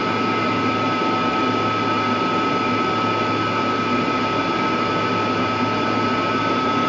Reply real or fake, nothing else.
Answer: real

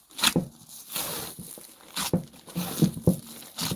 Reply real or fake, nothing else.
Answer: real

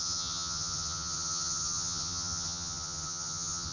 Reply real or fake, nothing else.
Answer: fake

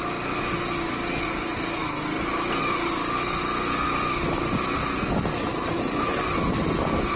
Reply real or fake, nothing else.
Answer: real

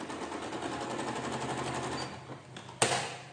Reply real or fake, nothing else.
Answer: real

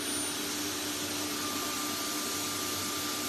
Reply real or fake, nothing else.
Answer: real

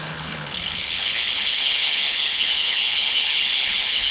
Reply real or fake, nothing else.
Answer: fake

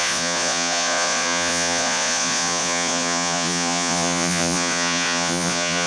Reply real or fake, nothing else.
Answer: fake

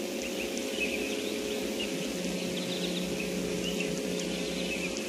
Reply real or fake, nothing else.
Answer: real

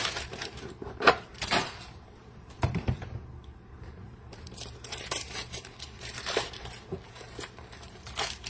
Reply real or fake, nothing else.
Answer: fake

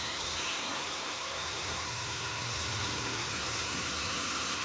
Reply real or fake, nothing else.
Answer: fake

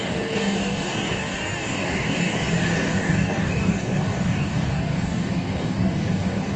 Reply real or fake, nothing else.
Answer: fake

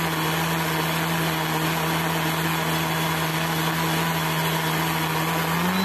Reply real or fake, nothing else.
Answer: real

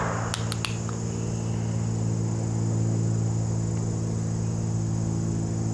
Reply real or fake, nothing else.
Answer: real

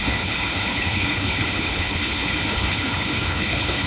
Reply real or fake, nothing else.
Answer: fake